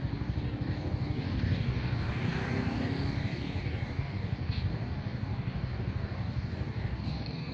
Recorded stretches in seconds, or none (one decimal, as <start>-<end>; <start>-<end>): none